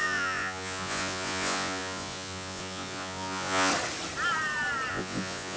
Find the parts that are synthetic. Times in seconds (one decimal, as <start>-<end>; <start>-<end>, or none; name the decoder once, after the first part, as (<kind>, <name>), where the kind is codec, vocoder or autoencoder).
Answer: 0.0-3.7 (vocoder, Vocos); 4.9-5.6